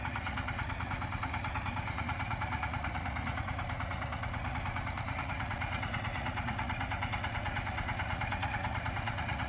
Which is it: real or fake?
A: fake